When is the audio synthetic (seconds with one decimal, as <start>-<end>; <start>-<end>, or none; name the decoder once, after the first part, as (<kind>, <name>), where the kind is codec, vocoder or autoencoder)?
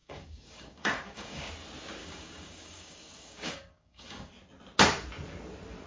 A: 0.0-1.5 (codec, DAC); 2.0-4.3